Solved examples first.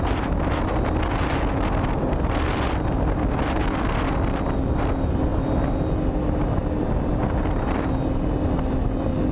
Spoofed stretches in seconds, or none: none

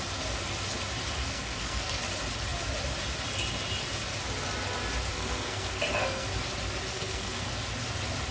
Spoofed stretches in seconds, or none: 1.2-2.0 (codec, SNAC); 5.1-6.3; 6.9-7.5